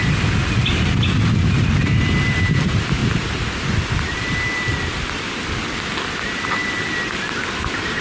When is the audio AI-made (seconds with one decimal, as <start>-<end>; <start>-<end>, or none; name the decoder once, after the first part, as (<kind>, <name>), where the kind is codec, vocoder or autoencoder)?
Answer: none